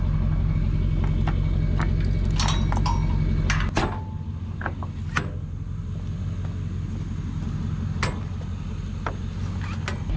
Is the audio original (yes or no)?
yes